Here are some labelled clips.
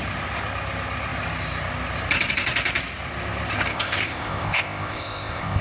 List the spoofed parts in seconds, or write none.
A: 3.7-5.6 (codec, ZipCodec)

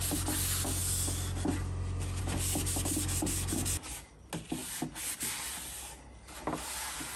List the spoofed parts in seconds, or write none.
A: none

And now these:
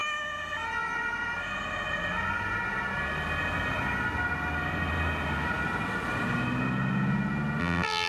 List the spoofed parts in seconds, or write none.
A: 7.6-8.1 (vocoder, BigVGAN v2)